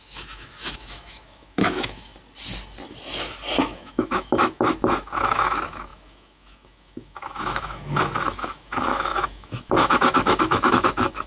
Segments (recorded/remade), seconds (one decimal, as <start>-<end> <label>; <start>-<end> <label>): 0.0-2.1 remade; 2.1-3.6 recorded; 3.6-11.3 remade